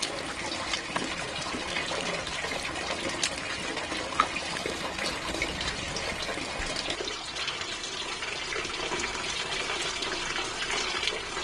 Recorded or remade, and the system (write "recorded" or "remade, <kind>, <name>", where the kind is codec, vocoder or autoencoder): recorded